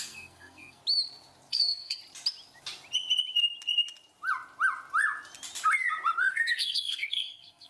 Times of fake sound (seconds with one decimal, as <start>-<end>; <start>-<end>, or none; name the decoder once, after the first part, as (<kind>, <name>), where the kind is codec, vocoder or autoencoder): 0.0-0.8 (codec, SNAC); 1.5-2.0; 6.3-7.7